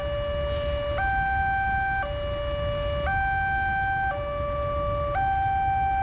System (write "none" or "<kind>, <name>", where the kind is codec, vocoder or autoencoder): none